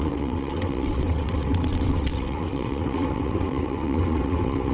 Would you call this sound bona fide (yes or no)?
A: no